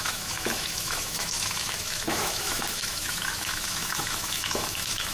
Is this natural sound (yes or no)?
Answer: no